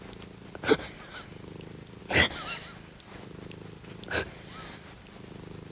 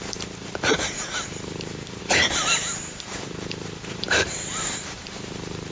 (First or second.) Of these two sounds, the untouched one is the first